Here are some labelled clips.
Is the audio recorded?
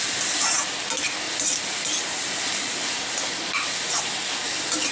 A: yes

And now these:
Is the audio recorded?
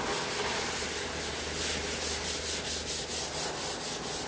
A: yes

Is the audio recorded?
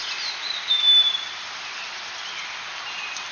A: yes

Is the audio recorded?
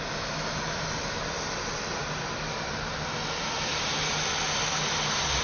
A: yes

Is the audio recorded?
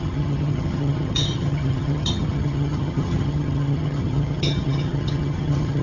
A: no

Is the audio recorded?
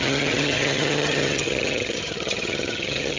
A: no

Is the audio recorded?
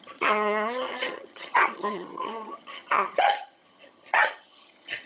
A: no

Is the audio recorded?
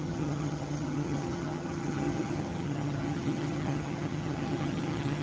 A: no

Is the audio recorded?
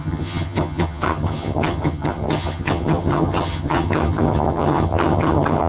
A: no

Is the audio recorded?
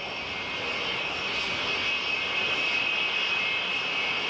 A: yes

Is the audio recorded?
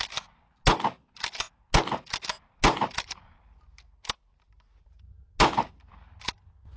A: yes